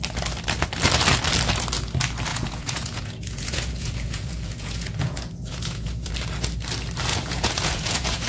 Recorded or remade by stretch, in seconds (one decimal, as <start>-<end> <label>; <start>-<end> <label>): 0.0-2.3 recorded; 2.3-6.1 remade; 6.1-7.1 recorded; 7.1-8.3 remade